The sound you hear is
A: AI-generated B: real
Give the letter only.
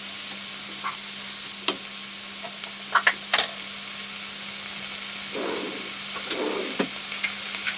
B